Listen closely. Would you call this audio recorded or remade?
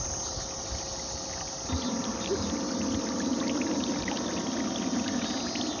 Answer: recorded